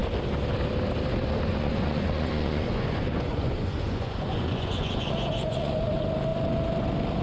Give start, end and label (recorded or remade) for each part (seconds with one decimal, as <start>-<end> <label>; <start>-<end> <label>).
0.0-1.5 recorded; 1.5-5.8 remade; 5.8-7.2 recorded